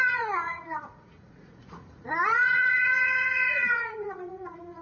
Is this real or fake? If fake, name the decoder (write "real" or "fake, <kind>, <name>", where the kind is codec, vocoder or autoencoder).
fake, vocoder, Vocos